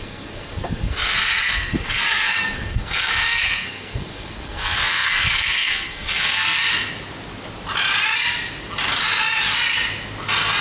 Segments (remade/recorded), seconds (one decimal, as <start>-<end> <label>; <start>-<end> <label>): 0.0-6.6 remade; 6.6-10.6 recorded